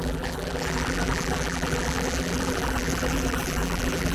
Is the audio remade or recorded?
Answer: remade